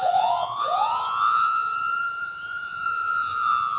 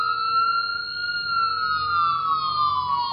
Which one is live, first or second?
second